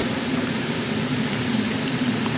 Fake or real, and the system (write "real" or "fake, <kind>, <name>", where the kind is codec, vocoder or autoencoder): fake, vocoder, BigVGAN v2